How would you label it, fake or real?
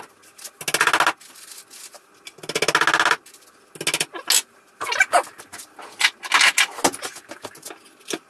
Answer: real